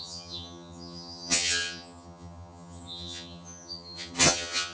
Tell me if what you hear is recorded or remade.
remade